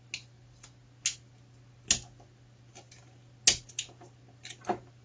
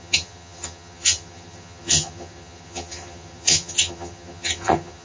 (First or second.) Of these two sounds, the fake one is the second